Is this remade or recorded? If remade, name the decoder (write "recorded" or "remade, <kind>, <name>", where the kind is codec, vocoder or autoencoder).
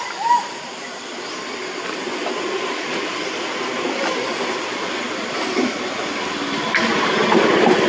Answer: remade, vocoder, BigVGAN v2